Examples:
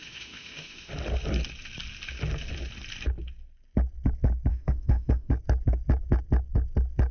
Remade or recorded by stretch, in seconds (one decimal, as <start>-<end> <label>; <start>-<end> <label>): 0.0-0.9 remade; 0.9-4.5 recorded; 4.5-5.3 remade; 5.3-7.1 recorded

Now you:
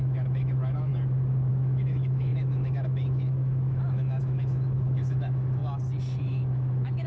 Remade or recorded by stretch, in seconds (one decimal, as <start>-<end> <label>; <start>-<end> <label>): 0.0-0.9 remade; 0.9-1.5 recorded; 1.5-5.6 remade; 5.6-6.2 recorded; 6.2-7.1 remade

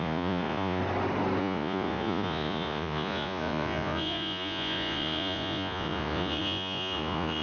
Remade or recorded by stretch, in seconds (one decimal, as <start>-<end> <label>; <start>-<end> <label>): 0.0-0.8 remade; 0.8-1.4 recorded; 1.4-7.4 remade